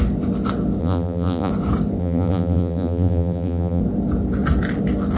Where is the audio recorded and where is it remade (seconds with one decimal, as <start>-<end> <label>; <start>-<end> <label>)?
0.0-0.8 recorded; 0.8-1.5 remade; 1.5-2.0 recorded; 2.0-3.8 remade; 3.8-5.2 recorded